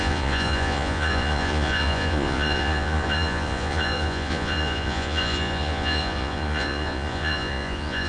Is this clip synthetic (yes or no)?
yes